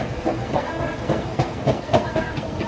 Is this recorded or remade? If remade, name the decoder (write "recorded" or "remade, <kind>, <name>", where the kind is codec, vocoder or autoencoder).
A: remade, codec, SNAC